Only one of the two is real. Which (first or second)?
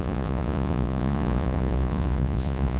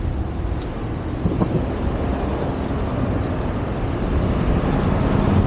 second